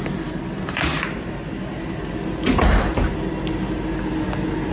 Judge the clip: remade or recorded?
recorded